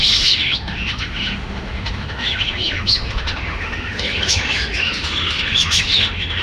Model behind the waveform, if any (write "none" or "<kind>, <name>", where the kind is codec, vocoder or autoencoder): autoencoder, DAC-VAE